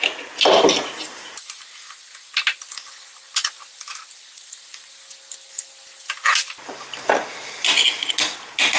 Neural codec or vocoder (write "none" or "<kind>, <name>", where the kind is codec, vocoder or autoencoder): none